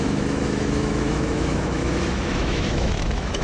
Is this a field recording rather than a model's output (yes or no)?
no